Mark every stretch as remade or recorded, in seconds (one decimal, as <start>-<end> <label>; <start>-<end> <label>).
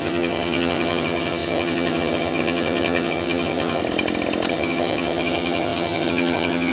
0.0-3.8 remade; 3.8-4.5 recorded; 4.5-6.7 remade